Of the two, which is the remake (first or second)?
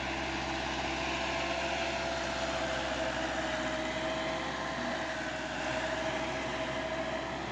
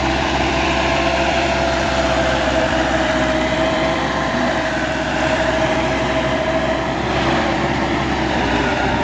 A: second